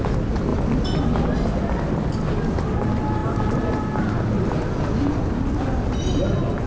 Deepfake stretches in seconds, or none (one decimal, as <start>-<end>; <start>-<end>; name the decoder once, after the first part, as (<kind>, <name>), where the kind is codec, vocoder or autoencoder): none